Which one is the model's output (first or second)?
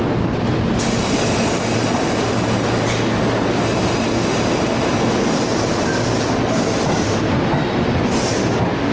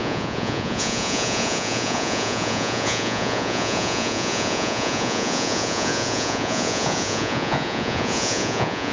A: second